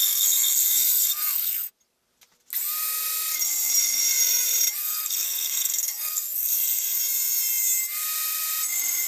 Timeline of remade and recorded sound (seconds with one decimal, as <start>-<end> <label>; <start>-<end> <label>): 0.0-1.7 remade; 1.7-4.8 recorded; 4.8-7.0 remade; 7.0-9.1 recorded